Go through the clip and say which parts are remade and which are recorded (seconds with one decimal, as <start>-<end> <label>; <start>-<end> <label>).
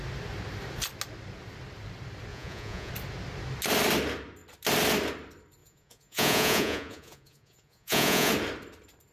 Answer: 0.0-2.3 recorded; 2.3-2.9 remade; 2.9-5.6 recorded; 5.6-8.3 remade; 8.3-9.1 recorded